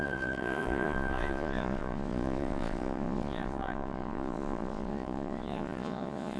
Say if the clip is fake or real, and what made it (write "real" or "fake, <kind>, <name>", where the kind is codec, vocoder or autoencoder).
fake, vocoder, Vocos